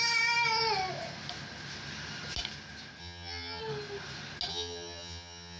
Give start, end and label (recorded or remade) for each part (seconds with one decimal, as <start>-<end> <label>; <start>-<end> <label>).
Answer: 0.0-3.0 recorded; 3.0-3.6 remade; 3.6-4.5 recorded; 4.5-5.6 remade